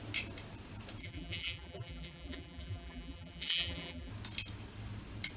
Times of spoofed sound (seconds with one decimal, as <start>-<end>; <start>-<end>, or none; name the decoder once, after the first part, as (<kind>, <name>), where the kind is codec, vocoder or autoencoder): 1.0-4.1 (vocoder, BigVGAN v2)